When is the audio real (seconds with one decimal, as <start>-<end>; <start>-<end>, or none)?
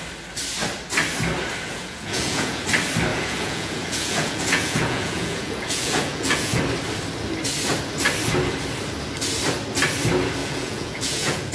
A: 0.0-1.7; 2.6-3.1; 6.6-10.4